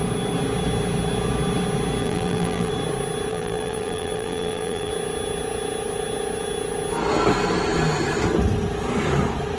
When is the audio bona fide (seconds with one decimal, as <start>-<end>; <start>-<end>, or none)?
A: 0.0-2.0; 2.7-3.3; 4.9-9.6